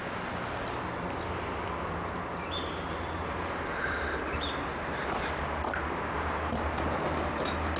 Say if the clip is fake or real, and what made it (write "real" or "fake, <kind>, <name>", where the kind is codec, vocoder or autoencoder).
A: real